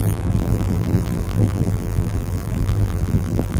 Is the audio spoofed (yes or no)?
yes